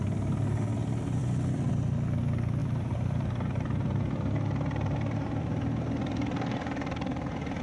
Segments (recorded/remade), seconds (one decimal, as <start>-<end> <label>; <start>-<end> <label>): 0.0-2.6 recorded; 2.6-7.6 remade